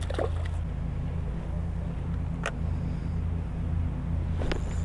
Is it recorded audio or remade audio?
recorded